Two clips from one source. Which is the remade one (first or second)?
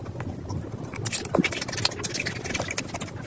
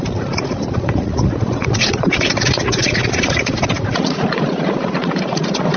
second